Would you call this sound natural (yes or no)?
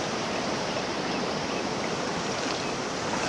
yes